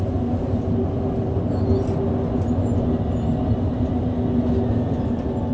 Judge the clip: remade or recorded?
recorded